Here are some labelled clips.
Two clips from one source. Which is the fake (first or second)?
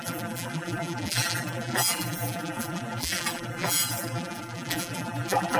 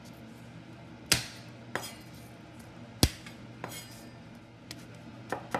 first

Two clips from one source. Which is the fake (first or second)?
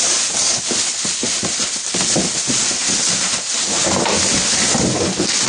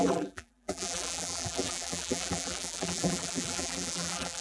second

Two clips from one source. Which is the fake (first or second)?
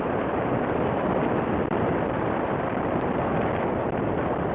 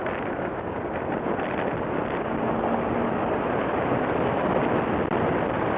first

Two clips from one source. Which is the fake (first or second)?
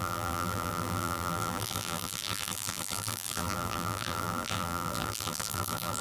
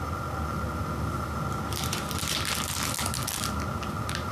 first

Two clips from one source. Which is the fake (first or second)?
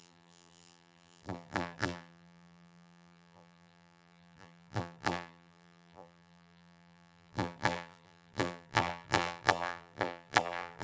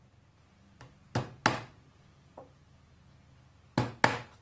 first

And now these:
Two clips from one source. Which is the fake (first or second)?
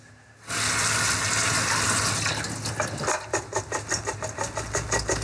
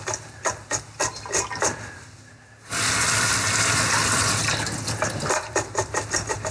second